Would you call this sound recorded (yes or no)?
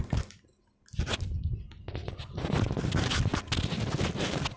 yes